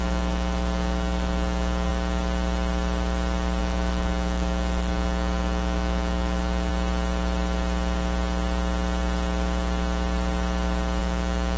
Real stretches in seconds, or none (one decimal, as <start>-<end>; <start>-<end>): 1.9-3.6; 6.7-11.0